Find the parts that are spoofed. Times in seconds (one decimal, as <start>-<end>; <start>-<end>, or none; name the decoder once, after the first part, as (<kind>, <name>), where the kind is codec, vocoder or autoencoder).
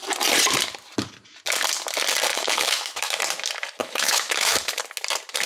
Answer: 2.3-3.2 (autoencoder, DAC-VAE); 3.8-4.8